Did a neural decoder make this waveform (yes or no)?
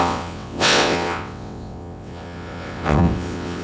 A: yes